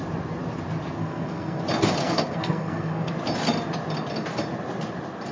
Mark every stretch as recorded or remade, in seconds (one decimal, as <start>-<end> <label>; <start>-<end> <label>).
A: 0.0-1.0 recorded; 1.0-1.6 remade; 1.6-2.0 recorded; 2.0-3.1 remade; 3.1-5.3 recorded

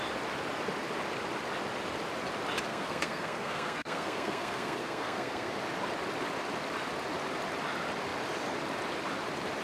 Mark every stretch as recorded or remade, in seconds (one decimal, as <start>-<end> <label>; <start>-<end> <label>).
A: 0.0-2.7 recorded; 2.7-5.5 remade; 5.5-9.6 recorded

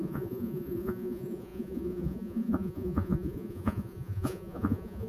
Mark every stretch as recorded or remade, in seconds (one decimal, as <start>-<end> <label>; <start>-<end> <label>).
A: 0.0-5.1 remade